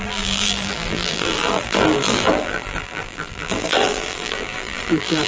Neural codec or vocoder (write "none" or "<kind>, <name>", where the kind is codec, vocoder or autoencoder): vocoder, BigVGAN v2